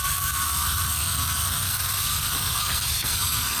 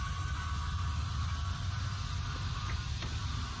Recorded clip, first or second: second